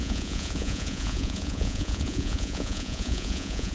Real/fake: fake